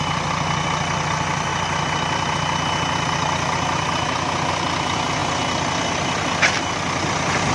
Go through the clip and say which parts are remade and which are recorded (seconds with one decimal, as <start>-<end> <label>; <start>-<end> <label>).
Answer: 0.0-7.5 recorded